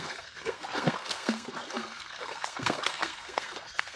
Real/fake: fake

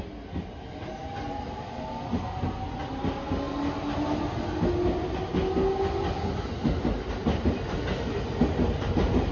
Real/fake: real